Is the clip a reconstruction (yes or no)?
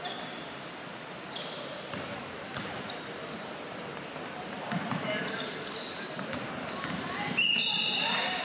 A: yes